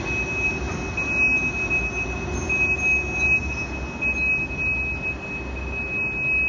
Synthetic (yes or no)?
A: no